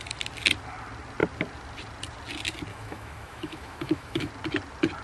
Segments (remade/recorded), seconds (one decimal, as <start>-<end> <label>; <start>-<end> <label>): 0.0-2.7 recorded; 2.7-4.3 remade; 4.3-5.0 recorded